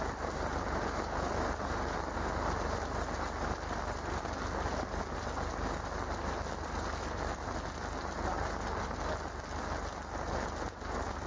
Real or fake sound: real